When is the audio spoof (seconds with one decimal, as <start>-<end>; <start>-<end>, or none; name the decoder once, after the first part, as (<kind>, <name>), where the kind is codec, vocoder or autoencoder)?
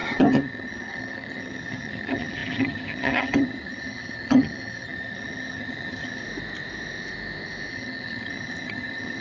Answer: 0.0-6.2 (vocoder, HiFi-GAN); 7.7-9.2